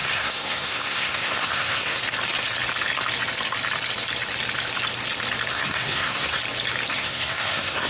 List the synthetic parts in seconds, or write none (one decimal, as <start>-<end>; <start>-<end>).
0.0-2.0; 5.5-6.4; 6.9-7.9